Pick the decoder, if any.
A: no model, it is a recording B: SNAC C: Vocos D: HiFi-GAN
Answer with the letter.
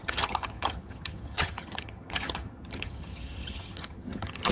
D